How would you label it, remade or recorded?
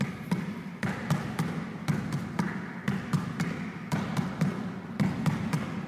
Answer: recorded